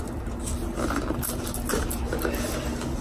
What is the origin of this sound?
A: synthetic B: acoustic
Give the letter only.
B